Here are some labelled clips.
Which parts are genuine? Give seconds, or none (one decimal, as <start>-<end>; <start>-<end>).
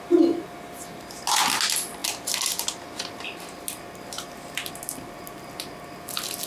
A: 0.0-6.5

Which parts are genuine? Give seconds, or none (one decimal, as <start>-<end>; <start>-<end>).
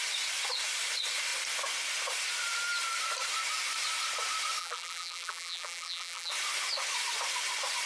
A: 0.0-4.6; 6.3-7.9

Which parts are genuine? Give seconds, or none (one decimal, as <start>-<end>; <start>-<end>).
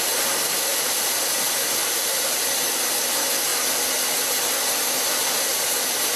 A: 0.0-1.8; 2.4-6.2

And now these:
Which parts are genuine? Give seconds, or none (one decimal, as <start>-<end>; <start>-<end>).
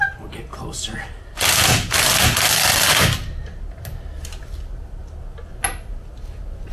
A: 0.0-0.5; 2.9-6.7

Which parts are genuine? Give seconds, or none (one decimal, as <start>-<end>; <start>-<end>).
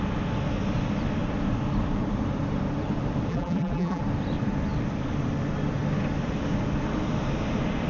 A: 0.0-3.3; 4.0-7.9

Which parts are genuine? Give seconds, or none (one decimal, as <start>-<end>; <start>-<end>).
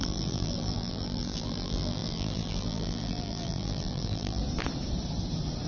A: 4.4-5.7